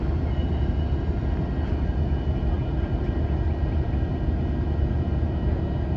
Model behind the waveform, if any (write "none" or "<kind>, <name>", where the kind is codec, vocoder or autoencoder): none